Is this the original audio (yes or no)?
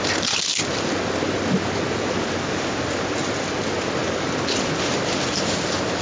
yes